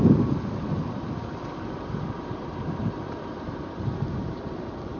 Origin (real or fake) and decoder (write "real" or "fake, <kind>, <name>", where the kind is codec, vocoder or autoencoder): real